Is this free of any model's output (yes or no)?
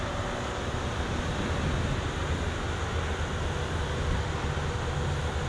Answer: yes